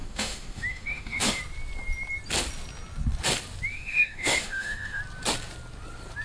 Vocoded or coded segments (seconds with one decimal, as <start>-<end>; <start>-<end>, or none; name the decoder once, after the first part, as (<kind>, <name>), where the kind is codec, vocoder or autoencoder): 0.0-1.4 (autoencoder, DAC-VAE); 3.7-5.0